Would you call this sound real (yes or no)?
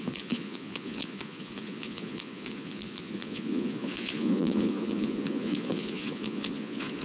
no